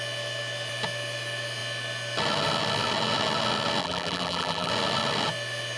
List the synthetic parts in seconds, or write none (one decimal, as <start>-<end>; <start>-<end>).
3.8-4.7